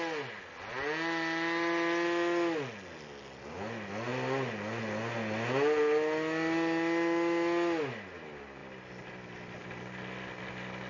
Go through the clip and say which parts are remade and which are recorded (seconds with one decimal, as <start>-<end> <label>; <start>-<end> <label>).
0.0-10.9 recorded